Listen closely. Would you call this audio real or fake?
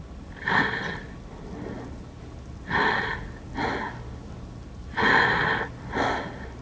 real